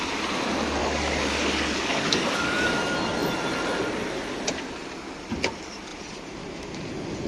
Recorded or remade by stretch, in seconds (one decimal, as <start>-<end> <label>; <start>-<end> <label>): 0.0-0.8 recorded; 0.8-2.7 remade; 2.7-7.3 recorded